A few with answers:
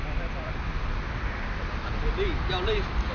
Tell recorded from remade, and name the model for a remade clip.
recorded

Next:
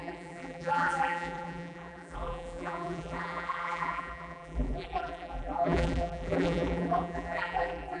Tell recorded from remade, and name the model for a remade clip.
remade, vocoder, BigVGAN v2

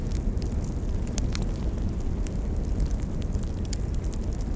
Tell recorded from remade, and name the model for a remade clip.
recorded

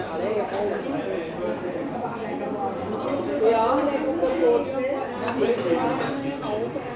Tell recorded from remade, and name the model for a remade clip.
recorded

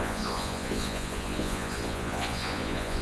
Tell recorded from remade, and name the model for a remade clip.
remade, vocoder, Vocos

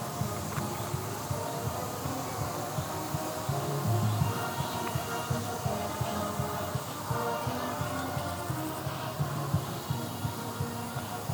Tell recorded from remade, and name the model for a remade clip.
recorded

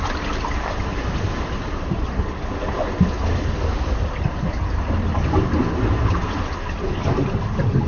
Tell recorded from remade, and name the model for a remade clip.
recorded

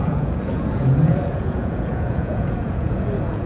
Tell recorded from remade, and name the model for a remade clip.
remade, vocoder, Vocos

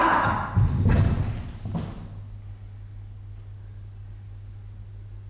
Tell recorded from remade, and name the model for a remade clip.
recorded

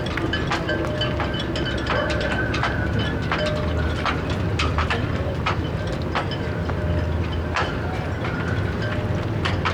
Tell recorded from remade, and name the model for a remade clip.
recorded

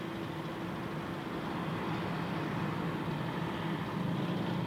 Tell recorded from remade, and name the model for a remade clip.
recorded